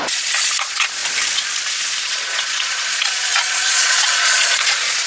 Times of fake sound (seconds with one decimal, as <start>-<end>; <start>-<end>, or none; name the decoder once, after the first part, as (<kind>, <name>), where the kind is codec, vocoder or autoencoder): 0.0-1.0 (vocoder, Vocos); 2.0-5.1